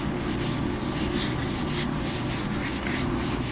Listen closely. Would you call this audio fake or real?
real